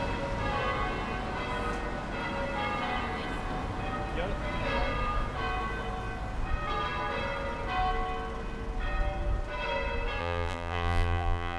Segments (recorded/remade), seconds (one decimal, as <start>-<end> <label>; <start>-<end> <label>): 0.0-10.2 recorded; 10.2-11.6 remade